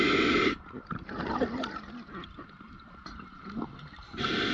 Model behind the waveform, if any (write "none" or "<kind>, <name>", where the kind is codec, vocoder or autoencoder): none